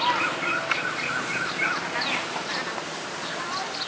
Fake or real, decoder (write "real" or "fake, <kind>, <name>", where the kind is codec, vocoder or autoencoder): real